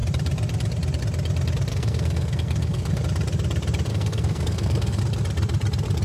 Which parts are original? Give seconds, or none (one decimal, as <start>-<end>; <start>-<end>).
0.0-1.7; 3.0-3.9; 5.0-6.0